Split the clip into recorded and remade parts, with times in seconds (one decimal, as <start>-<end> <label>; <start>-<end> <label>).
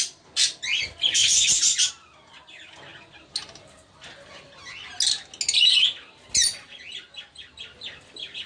0.0-8.5 recorded